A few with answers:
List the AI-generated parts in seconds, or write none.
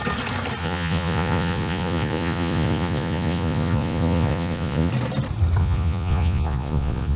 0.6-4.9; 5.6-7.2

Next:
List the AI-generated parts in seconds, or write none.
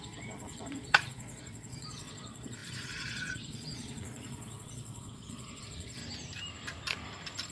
0.0-6.0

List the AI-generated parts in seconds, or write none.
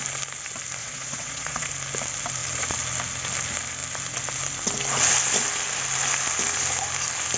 0.8-1.7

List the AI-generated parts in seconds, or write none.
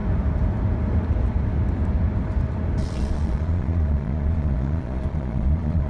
2.8-5.9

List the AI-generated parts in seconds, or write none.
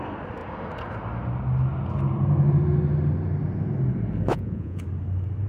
4.3-4.8